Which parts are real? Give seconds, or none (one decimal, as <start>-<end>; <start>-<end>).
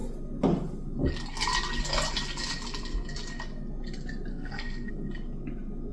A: 0.0-4.3; 4.9-5.9